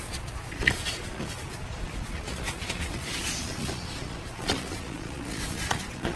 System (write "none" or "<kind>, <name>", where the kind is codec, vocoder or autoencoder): vocoder, Vocos